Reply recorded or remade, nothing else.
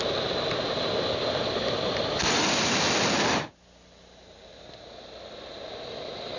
recorded